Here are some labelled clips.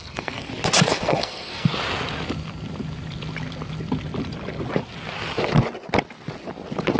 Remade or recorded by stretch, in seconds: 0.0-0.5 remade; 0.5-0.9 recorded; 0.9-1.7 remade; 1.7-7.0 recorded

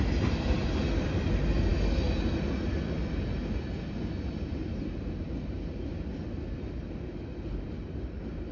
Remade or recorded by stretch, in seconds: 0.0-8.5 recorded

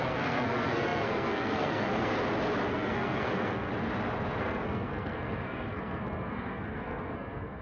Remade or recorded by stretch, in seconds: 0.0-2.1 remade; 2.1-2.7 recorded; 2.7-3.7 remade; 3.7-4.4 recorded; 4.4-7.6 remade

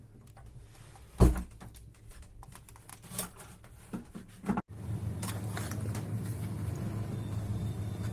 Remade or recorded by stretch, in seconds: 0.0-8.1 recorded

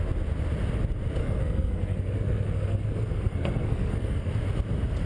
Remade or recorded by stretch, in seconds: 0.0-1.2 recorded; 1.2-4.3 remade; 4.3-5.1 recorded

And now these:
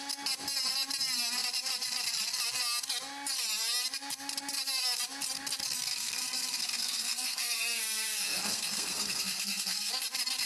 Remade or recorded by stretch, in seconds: 0.0-5.9 recorded; 5.9-9.9 remade; 9.9-10.5 recorded

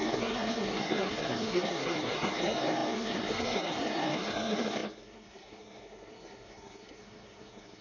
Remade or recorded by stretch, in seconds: 0.0-7.8 remade

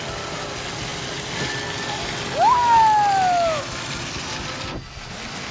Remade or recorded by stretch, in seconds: 0.0-5.5 recorded